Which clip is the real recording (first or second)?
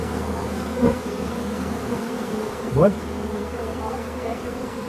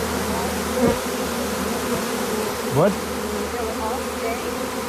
second